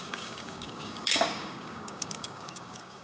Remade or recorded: remade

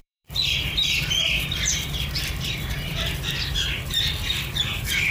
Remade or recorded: remade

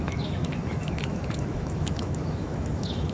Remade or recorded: remade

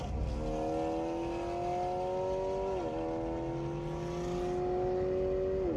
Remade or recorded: recorded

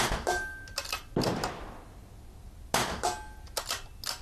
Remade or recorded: recorded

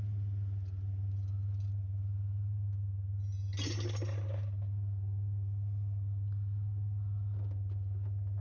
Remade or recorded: recorded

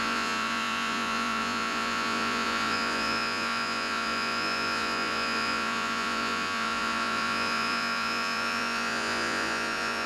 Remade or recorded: remade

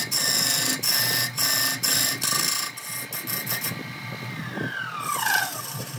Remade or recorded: recorded